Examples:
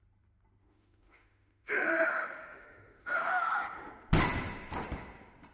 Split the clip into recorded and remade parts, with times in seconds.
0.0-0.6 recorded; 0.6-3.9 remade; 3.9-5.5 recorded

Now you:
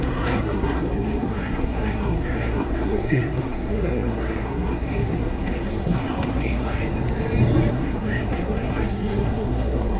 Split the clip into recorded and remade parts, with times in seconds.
0.0-6.8 remade; 6.8-7.7 recorded; 7.7-10.0 remade

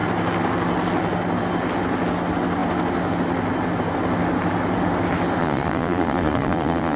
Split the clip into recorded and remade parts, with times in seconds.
0.0-5.4 recorded; 5.4-7.0 remade

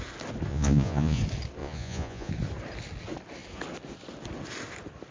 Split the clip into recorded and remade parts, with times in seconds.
0.0-0.5 recorded; 0.5-1.2 remade; 1.2-1.6 recorded; 1.6-2.3 remade; 2.3-5.1 recorded